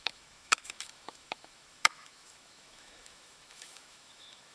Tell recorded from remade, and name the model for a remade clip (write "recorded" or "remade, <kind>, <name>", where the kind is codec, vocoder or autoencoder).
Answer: remade, autoencoder, DAC-VAE